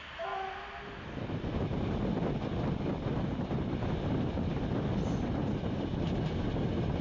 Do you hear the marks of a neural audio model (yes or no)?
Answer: no